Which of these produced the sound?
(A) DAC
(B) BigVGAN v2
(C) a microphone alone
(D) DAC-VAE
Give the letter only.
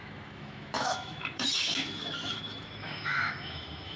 D